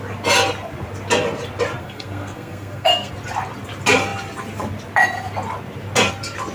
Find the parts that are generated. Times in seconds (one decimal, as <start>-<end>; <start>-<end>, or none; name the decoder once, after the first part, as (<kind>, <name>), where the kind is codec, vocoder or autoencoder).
1.8-3.1 (codec, SNAC)